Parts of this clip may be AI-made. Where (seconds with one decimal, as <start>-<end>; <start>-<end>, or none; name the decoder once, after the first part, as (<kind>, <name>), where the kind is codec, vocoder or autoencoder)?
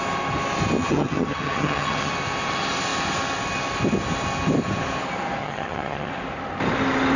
0.8-2.1 (vocoder, HiFi-GAN); 5.4-6.1